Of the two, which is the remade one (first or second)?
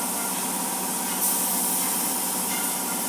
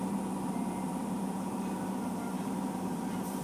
second